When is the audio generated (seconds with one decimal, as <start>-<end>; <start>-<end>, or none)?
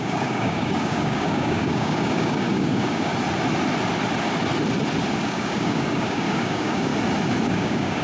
0.0-3.1; 5.2-6.9; 7.5-8.0